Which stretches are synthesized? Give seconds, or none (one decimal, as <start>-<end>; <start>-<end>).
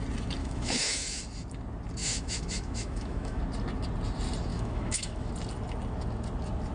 0.4-1.2; 2.0-3.4; 4.5-5.3